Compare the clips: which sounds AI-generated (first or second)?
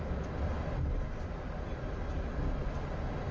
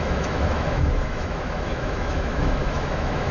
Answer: second